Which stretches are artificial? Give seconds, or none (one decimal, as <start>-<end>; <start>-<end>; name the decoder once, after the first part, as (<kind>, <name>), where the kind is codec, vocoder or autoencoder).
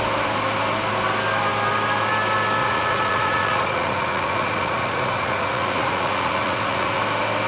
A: 2.6-7.0 (vocoder, Vocos)